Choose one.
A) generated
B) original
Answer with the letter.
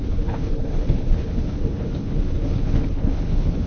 A